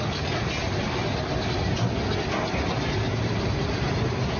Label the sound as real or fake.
real